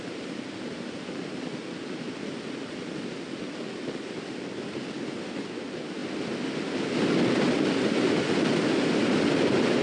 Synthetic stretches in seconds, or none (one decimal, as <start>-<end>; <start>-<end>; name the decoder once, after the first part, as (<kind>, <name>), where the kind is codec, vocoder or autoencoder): none